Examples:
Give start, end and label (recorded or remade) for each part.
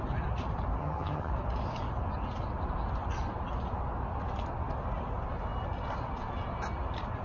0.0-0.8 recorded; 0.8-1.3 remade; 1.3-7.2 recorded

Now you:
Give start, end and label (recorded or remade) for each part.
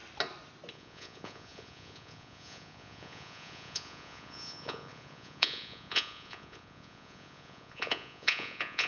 0.0-0.7 recorded; 0.7-8.9 remade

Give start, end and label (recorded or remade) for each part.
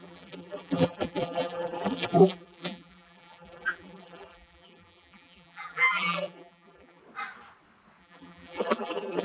0.0-7.0 remade; 7.0-8.0 recorded; 8.0-9.2 remade